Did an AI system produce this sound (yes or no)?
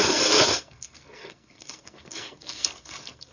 yes